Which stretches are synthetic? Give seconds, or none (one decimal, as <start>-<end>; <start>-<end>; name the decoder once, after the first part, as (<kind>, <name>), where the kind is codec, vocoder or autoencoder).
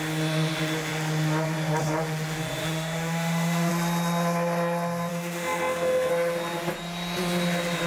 2.6-3.7 (autoencoder, DAC-VAE); 5.1-6.1